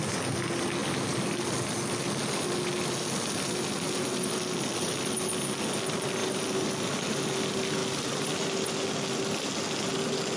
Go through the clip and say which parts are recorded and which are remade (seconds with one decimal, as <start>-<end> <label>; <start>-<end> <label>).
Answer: 0.0-10.4 recorded